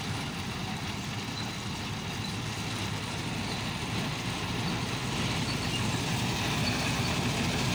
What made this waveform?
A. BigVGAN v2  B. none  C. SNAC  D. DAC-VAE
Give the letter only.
B